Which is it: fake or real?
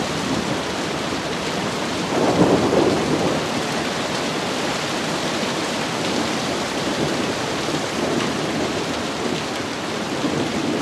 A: fake